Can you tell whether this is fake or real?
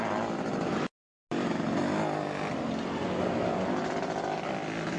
real